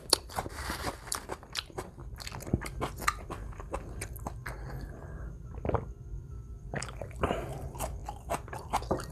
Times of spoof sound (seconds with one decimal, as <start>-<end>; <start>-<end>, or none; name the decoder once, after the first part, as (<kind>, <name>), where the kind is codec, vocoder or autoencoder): 0.0-2.0 (vocoder, BigVGAN v2); 6.2-8.0; 8.5-9.1